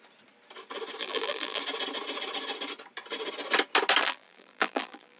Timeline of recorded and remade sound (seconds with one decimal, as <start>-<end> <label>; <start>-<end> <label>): 0.0-1.0 recorded; 1.0-1.6 remade; 1.6-4.0 recorded; 4.0-5.2 remade